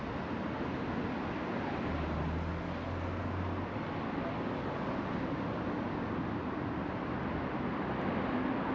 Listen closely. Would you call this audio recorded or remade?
recorded